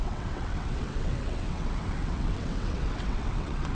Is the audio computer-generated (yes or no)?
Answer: yes